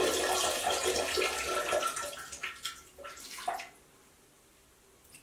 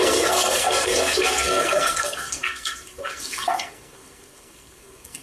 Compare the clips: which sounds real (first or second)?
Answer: first